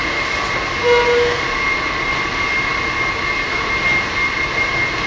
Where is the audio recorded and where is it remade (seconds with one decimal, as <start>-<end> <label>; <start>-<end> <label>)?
0.0-5.1 recorded